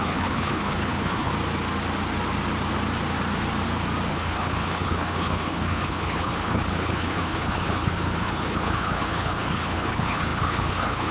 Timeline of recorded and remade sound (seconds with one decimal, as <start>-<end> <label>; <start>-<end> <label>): 0.0-1.3 remade; 1.3-4.1 recorded; 4.1-11.1 remade